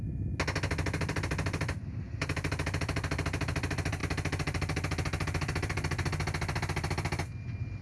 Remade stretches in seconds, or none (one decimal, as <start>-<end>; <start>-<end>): none